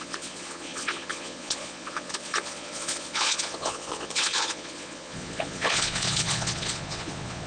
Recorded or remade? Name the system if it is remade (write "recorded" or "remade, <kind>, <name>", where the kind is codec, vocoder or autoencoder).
remade, vocoder, Vocos